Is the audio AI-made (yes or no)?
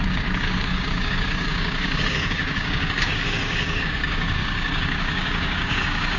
yes